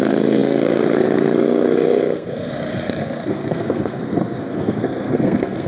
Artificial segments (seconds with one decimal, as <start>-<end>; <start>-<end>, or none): 0.0-5.7